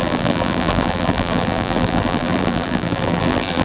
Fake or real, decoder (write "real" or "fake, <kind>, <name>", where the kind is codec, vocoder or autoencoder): fake, vocoder, BigVGAN v2